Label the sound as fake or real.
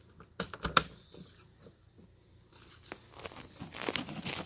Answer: real